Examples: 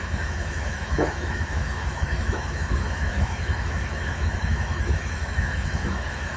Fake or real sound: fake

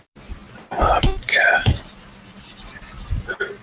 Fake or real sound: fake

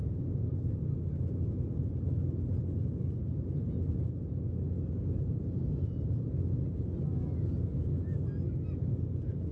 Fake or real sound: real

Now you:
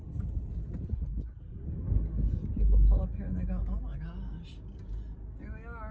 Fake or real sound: real